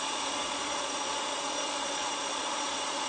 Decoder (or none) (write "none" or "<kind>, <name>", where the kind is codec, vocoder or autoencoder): vocoder, Vocos